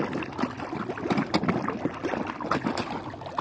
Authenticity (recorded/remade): recorded